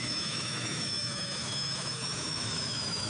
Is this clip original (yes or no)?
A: no